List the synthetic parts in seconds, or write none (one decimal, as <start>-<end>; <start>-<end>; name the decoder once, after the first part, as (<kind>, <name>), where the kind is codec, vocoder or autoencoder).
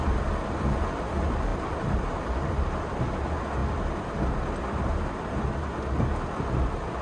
1.5-3.0 (vocoder, BigVGAN v2)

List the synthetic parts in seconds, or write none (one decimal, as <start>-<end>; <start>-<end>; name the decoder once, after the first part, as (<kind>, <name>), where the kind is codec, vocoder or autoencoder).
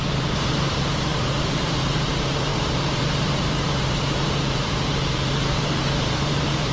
0.0-6.7 (vocoder, BigVGAN v2)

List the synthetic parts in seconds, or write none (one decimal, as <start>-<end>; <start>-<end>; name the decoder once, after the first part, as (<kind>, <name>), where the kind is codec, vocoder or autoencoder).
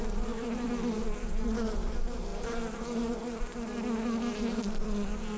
0.0-0.7 (vocoder, BigVGAN v2)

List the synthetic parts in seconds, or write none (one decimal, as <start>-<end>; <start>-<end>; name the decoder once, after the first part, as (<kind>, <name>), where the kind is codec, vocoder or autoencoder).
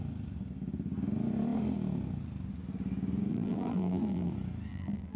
3.3-4.3 (vocoder, BigVGAN v2); 4.7-5.2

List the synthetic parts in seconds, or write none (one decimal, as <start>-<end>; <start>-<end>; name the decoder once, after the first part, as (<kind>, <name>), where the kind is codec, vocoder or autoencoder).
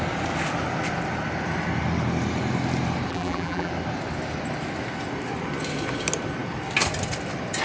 3.1-3.7 (vocoder, BigVGAN v2)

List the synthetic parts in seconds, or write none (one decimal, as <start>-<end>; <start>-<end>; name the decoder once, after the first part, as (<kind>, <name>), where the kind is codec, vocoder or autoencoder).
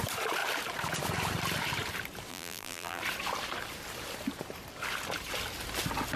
2.3-3.0 (vocoder, BigVGAN v2)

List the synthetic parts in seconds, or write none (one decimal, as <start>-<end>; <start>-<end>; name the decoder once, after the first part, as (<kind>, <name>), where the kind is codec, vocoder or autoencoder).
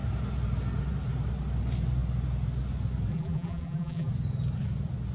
3.1-4.1 (vocoder, BigVGAN v2)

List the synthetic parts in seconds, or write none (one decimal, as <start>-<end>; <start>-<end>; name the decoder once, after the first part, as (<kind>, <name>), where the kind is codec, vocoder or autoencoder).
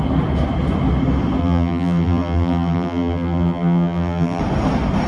1.4-4.4 (vocoder, BigVGAN v2)